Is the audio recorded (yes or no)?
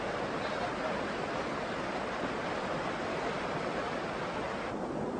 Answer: yes